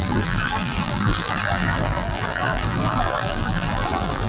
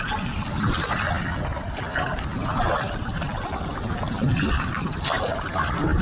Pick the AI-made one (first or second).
first